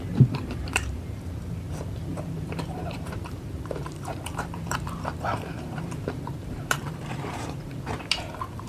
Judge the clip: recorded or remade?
remade